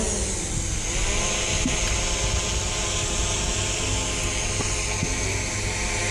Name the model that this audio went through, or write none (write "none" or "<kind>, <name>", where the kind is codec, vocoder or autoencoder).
none